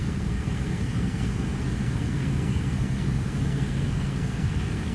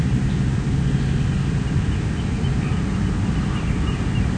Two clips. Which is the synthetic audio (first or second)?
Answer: first